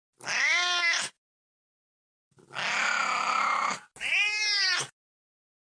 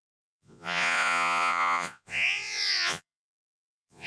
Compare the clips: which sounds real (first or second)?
first